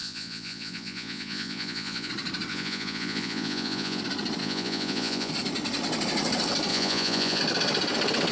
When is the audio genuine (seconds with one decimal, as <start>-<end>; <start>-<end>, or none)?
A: 2.1-2.5; 4.0-4.4; 5.3-6.7; 7.4-8.3